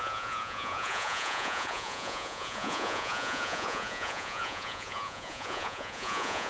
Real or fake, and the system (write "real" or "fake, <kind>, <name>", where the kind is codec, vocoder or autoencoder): fake, vocoder, Vocos